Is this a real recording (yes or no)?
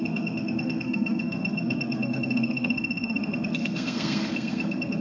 no